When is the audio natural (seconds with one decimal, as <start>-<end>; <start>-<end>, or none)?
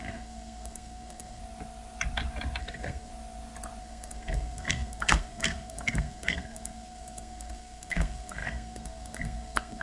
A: 1.4-2.6; 3.1-3.8